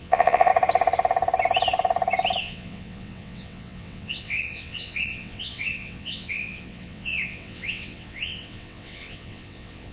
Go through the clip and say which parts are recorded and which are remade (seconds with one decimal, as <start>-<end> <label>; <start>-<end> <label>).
0.0-0.5 remade; 0.5-2.4 recorded; 2.4-9.9 remade